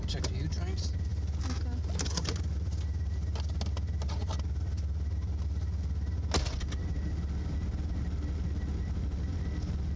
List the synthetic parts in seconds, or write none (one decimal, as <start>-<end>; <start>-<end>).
none